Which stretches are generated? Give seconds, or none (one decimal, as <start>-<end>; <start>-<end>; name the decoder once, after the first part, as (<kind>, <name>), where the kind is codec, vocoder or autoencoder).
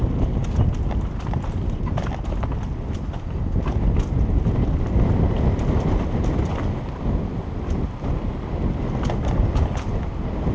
none